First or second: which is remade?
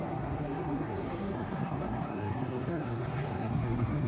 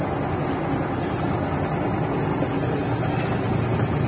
first